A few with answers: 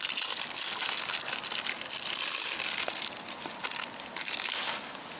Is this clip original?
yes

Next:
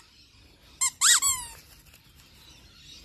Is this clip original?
yes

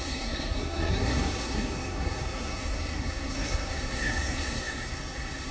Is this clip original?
no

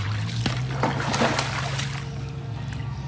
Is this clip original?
yes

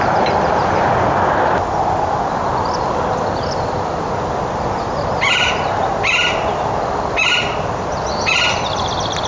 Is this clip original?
yes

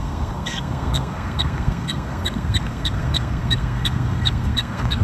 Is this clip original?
no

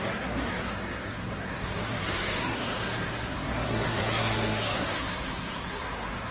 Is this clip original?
no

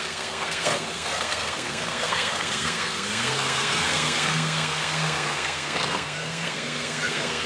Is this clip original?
no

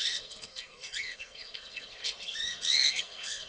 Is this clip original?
no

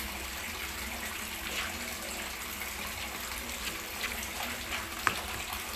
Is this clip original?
yes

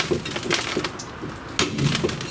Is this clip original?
yes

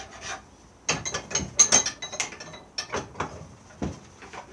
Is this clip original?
yes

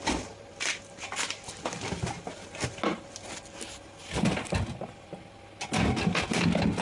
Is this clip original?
yes